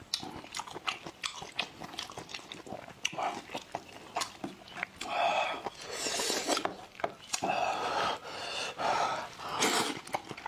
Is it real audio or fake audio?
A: real